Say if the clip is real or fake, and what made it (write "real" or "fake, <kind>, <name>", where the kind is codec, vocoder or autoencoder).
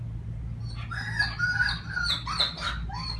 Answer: real